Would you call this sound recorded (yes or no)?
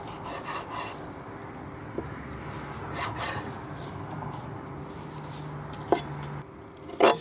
yes